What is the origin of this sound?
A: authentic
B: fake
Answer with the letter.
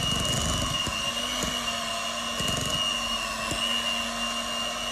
A